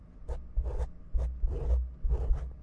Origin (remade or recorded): recorded